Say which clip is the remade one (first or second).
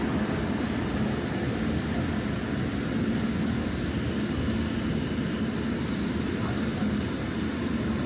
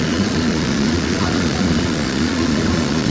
second